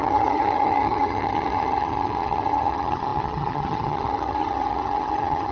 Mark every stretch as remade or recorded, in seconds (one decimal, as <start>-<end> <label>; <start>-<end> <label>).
0.0-5.5 remade